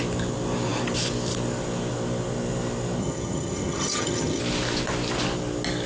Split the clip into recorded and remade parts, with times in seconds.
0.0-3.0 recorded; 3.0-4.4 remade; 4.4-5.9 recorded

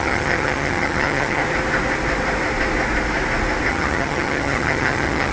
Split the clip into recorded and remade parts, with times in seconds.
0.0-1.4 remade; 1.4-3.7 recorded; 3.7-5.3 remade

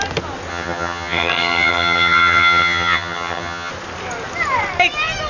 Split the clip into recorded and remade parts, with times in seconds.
0.0-0.5 recorded; 0.5-3.7 remade; 3.7-5.3 recorded

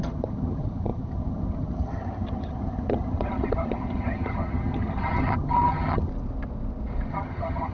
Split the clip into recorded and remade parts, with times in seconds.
0.0-6.1 remade; 6.1-7.1 recorded; 7.1-7.7 remade

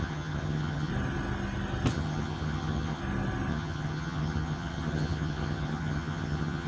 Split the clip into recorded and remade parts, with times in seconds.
0.0-0.9 remade; 0.9-1.9 recorded; 1.9-3.0 remade; 3.0-3.5 recorded; 3.5-6.7 remade